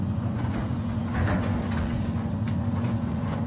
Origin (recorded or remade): remade